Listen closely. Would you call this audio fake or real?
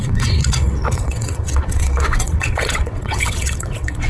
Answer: fake